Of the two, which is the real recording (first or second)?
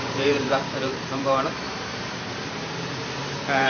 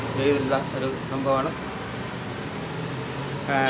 second